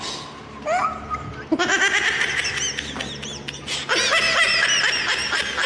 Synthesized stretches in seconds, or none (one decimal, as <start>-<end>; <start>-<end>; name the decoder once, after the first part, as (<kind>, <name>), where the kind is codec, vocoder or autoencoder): none